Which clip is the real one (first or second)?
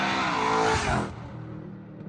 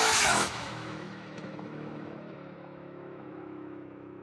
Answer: first